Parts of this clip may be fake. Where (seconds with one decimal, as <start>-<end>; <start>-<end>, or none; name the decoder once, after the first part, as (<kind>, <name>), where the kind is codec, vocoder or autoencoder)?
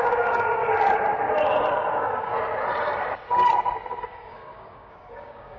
0.0-0.6 (codec, DAC); 1.9-2.3; 4.0-5.6